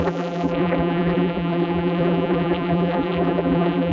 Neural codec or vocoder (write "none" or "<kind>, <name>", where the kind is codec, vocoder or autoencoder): vocoder, BigVGAN v2